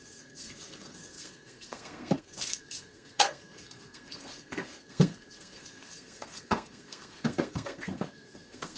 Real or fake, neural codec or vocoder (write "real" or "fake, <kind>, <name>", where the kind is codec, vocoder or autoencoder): fake, codec, SNAC